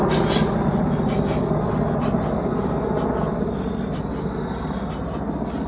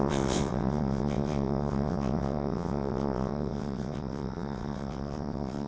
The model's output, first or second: second